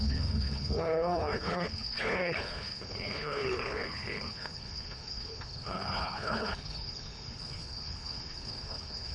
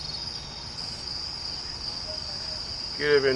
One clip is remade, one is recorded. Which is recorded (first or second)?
second